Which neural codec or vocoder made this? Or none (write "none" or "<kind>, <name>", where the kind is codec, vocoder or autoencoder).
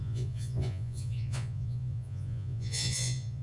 vocoder, Vocos